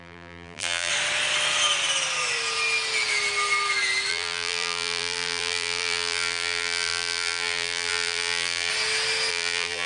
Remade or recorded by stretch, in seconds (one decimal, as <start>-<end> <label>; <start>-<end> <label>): 0.0-0.9 remade; 0.9-4.1 recorded; 4.1-8.7 remade; 8.7-9.3 recorded; 9.3-9.9 remade